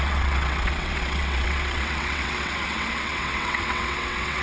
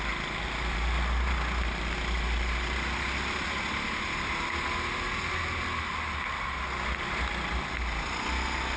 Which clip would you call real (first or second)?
second